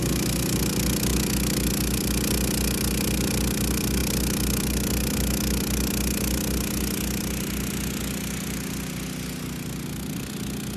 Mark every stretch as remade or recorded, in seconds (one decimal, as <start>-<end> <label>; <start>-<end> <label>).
0.0-10.8 recorded